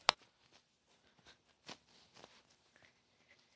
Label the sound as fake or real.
real